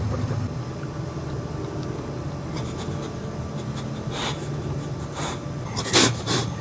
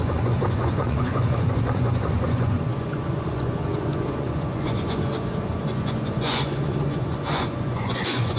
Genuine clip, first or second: first